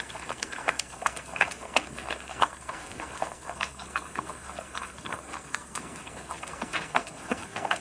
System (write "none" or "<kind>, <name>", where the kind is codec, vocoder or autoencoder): codec, SNAC